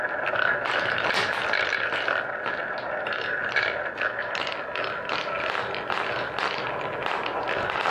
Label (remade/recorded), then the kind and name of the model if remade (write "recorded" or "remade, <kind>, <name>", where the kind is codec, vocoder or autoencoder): recorded